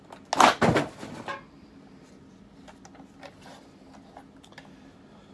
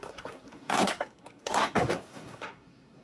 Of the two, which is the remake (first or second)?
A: second